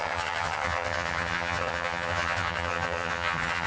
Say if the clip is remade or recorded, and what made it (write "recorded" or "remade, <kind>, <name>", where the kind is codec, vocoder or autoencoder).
remade, vocoder, HiFi-GAN